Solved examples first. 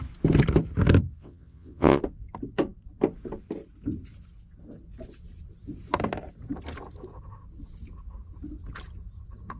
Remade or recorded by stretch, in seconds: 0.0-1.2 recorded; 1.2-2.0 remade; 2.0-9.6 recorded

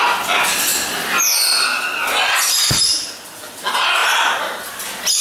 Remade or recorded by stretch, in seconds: 0.0-5.2 recorded

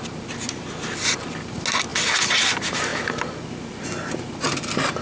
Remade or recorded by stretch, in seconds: 0.0-5.0 recorded

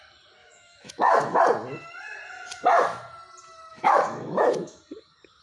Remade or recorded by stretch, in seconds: 0.0-0.4 recorded; 0.4-1.4 remade; 1.4-3.7 recorded; 3.7-4.8 remade; 4.8-5.4 recorded

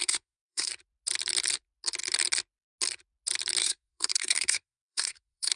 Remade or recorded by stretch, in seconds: 0.0-0.7 remade; 0.7-3.6 recorded; 3.6-5.6 remade

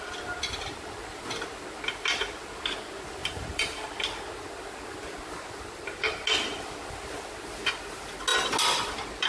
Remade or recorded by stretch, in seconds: 0.0-3.2 recorded; 3.2-3.9 remade; 3.9-9.3 recorded

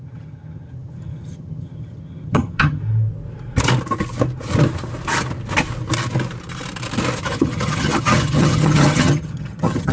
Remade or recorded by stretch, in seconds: 0.0-2.8 remade; 2.8-7.2 recorded; 7.2-9.9 remade

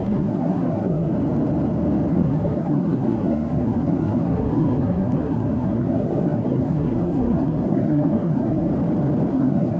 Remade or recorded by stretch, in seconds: 0.0-1.1 remade; 1.1-2.1 recorded; 2.1-8.7 remade; 8.7-9.3 recorded; 9.3-9.8 remade